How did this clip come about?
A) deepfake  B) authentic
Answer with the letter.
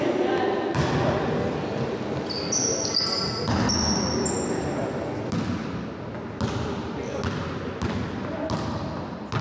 B